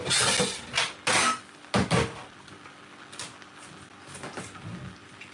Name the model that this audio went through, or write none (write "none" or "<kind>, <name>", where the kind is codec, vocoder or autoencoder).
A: none